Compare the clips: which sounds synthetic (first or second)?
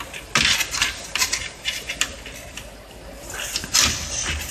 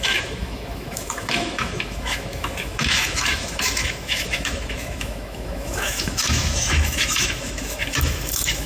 second